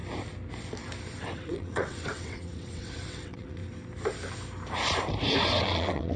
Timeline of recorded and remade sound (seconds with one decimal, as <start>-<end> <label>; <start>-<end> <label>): 0.0-1.2 recorded; 1.2-3.6 remade; 3.6-5.6 recorded; 5.6-6.2 remade